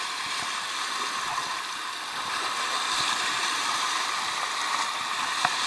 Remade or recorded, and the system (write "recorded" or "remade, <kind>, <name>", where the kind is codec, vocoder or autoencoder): remade, vocoder, BigVGAN v2